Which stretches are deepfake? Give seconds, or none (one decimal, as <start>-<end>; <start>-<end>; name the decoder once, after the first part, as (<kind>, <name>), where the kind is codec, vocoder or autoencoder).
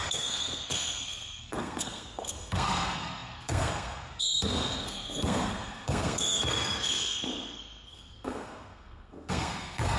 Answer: 0.0-10.0 (codec, SNAC)